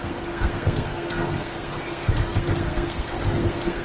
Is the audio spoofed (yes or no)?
yes